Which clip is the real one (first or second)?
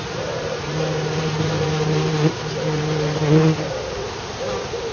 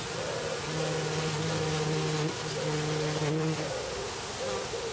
second